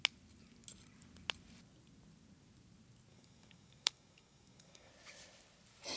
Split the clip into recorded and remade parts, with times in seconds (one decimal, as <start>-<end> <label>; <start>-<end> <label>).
0.0-3.1 recorded; 3.1-4.9 remade; 4.9-6.0 recorded